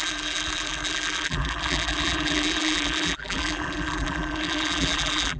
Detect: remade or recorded remade